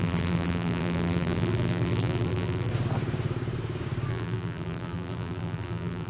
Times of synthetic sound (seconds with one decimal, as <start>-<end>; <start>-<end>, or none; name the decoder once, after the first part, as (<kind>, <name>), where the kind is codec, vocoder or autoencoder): 0.0-2.7 (vocoder, BigVGAN v2); 4.1-6.1